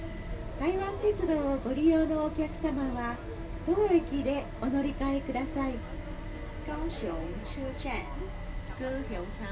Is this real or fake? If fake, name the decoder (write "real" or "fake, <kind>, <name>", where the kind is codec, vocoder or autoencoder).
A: real